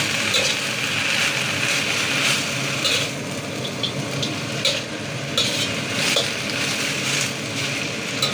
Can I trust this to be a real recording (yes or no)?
yes